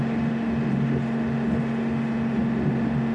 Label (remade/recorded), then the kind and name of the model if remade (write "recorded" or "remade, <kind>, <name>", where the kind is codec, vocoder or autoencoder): recorded